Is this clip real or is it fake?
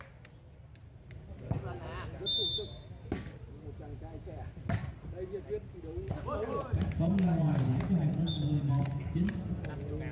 real